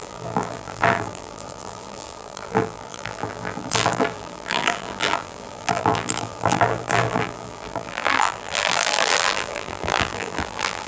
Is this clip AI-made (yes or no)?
yes